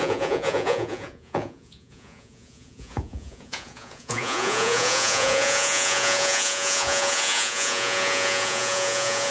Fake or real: fake